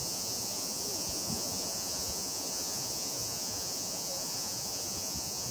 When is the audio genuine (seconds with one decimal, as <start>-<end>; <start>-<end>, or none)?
none

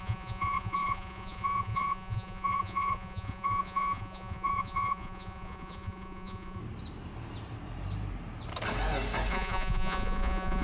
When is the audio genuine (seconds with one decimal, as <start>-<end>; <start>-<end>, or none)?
6.6-9.3

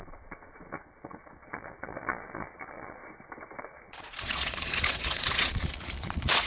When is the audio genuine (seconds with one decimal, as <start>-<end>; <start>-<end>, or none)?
3.0-3.6

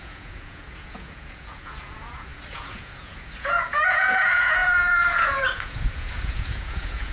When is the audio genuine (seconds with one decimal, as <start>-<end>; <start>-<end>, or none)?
none

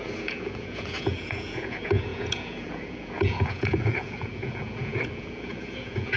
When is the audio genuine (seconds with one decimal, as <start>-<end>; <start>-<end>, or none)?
none

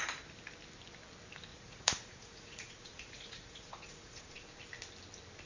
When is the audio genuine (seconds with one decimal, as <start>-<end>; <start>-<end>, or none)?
0.0-1.5; 4.6-5.5

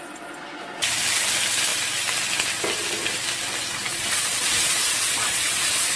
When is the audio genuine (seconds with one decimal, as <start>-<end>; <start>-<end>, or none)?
0.0-3.9

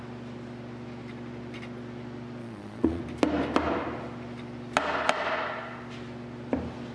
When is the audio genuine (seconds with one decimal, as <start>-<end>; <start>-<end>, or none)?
0.0-2.4; 3.0-6.9